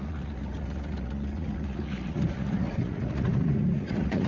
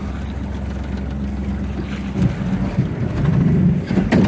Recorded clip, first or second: second